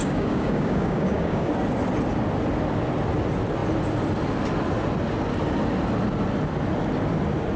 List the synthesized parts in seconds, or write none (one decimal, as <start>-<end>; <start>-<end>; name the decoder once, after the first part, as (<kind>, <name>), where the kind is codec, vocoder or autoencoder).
0.0-1.5 (codec, DAC)